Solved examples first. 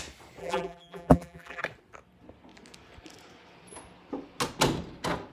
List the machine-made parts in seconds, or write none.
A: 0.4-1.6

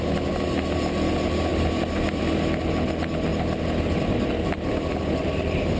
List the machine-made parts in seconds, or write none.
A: 1.5-2.2